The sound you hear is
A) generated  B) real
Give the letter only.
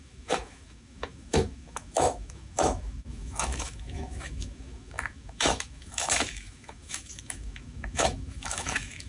A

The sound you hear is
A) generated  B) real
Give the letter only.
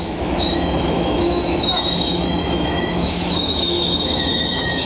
A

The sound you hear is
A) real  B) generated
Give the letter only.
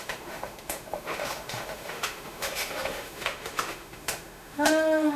B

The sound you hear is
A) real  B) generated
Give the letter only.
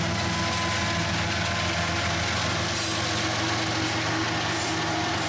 A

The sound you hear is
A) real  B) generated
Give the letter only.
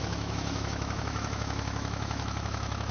B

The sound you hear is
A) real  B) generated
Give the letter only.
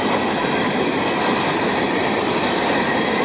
A